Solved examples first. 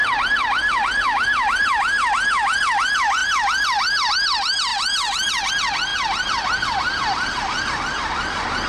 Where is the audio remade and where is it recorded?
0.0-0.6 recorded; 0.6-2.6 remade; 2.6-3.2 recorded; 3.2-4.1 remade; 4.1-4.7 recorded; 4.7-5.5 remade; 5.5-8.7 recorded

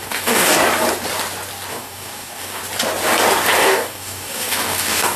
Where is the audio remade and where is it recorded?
0.0-0.6 remade; 0.6-1.7 recorded; 1.7-2.6 remade; 2.6-3.6 recorded; 3.6-5.2 remade

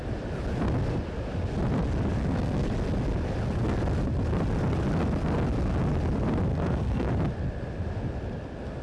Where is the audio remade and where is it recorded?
0.0-2.2 recorded; 2.2-2.7 remade; 2.7-6.5 recorded; 6.5-7.1 remade; 7.1-8.8 recorded